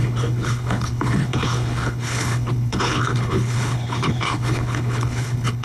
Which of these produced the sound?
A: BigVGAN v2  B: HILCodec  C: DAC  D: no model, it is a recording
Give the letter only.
B